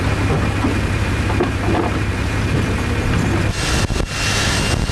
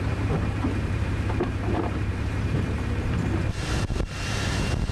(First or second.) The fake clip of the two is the second